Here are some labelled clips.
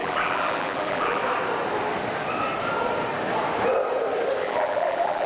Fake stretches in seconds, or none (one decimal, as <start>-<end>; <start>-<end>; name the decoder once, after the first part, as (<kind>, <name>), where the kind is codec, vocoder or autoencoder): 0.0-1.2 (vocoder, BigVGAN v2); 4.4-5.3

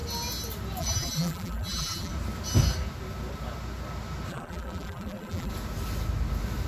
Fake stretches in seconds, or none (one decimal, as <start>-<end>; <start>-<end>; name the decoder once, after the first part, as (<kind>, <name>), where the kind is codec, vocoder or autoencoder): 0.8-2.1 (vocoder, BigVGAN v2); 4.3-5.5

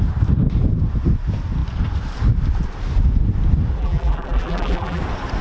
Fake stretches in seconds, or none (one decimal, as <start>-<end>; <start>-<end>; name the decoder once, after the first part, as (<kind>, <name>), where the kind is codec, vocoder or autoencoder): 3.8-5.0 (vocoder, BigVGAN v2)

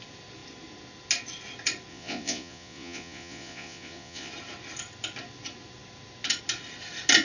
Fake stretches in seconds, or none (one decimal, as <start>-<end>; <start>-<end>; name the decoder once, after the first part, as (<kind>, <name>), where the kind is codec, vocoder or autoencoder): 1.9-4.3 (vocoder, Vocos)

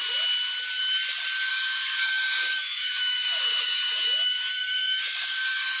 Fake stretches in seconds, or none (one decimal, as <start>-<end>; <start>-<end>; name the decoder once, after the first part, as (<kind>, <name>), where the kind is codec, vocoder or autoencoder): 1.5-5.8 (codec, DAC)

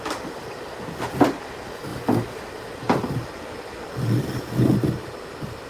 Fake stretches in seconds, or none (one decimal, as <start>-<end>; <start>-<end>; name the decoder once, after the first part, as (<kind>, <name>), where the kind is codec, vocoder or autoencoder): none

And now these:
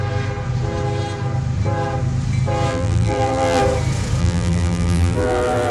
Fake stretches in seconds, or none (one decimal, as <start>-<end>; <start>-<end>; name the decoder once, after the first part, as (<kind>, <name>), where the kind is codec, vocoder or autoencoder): 2.7-3.6 (vocoder, BigVGAN v2); 4.2-5.7